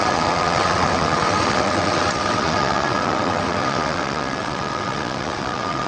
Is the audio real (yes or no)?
no